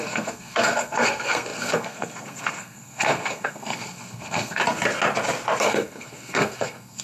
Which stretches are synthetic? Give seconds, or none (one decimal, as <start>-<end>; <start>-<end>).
0.0-4.6; 5.6-7.0